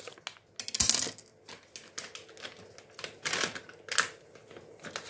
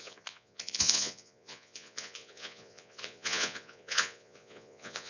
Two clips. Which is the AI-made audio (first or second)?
second